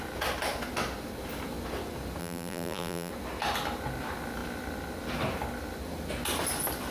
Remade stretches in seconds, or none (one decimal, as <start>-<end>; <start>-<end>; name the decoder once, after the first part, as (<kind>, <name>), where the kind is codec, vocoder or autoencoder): 2.2-3.1 (vocoder, BigVGAN v2)